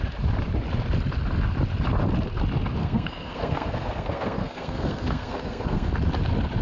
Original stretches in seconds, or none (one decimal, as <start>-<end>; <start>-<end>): 0.0-2.8; 5.9-6.6